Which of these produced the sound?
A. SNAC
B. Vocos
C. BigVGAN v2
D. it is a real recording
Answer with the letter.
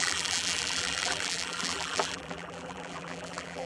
C